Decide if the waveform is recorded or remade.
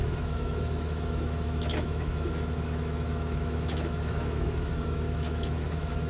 remade